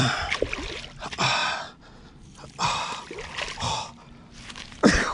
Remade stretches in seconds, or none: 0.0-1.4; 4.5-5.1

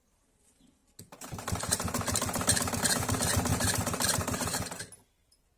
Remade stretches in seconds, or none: none